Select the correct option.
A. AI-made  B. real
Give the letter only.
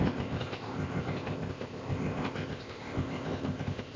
A